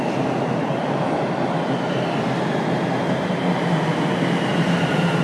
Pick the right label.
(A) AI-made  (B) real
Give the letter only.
B